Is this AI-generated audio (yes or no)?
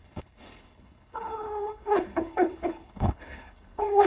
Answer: yes